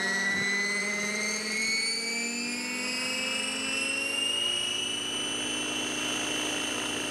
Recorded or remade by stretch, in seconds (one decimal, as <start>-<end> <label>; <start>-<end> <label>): 0.0-0.8 recorded; 0.8-2.1 remade; 2.1-7.1 recorded